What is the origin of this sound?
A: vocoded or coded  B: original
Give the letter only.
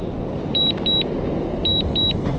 B